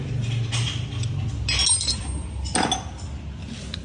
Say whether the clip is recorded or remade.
recorded